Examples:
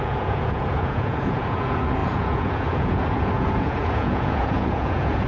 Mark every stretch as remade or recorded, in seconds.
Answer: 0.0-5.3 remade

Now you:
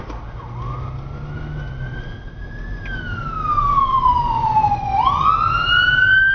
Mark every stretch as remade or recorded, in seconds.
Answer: 0.0-3.6 recorded; 3.6-5.3 remade; 5.3-6.3 recorded

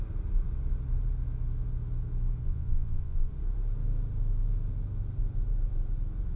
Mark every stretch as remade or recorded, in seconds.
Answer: 0.0-2.4 recorded; 2.4-3.3 remade; 3.3-6.4 recorded

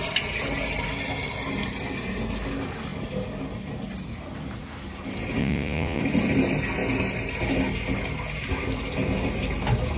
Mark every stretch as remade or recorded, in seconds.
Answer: 0.0-5.4 recorded; 5.4-6.0 remade; 6.0-10.0 recorded

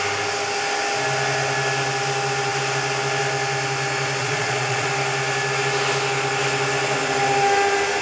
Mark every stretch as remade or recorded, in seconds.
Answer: 0.0-4.2 recorded; 4.2-4.9 remade; 4.9-8.0 recorded

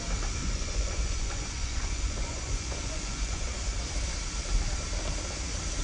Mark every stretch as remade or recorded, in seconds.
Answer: 0.0-0.4 recorded; 0.4-3.9 remade; 3.9-5.8 recorded

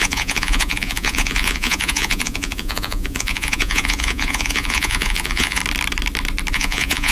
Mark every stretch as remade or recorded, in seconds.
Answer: 0.0-5.6 remade; 5.6-6.5 recorded; 6.5-7.1 remade

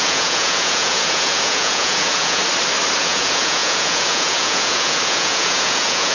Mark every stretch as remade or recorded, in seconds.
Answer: 0.0-2.4 remade; 2.4-3.0 recorded; 3.0-6.1 remade